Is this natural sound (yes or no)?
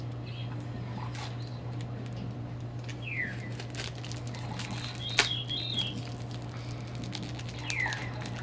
yes